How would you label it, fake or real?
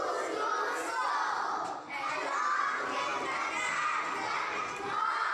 real